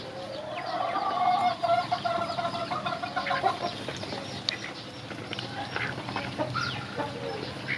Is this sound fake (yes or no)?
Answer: no